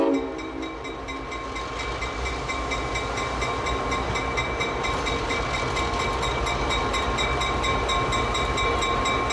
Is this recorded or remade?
recorded